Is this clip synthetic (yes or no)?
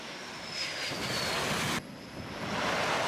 no